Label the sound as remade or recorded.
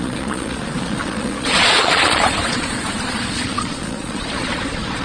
remade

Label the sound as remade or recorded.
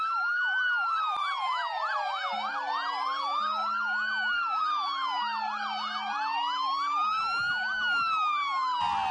recorded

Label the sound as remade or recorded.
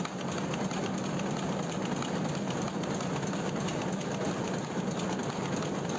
recorded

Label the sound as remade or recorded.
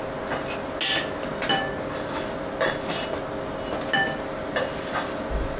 recorded